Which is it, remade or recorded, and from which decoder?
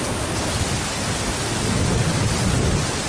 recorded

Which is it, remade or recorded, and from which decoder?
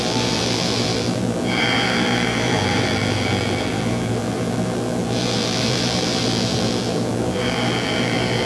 remade, vocoder, BigVGAN v2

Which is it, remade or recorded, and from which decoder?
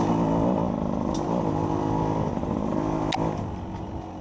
recorded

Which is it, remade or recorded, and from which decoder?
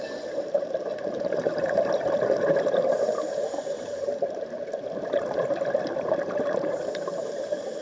remade, vocoder, BigVGAN v2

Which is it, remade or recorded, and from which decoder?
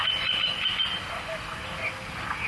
recorded